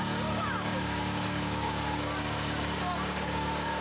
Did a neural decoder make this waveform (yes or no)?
yes